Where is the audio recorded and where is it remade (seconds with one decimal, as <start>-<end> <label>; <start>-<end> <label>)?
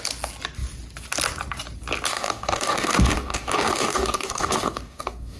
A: 0.0-2.1 recorded; 2.1-5.4 remade